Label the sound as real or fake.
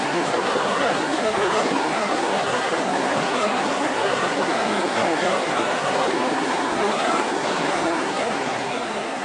fake